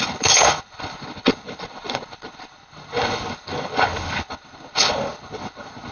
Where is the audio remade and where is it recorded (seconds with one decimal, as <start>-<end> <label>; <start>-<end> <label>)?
0.0-5.9 remade